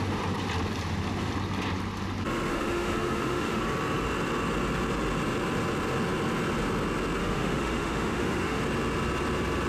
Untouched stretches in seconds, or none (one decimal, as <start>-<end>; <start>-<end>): 0.0-2.5; 3.6-7.2; 8.6-9.7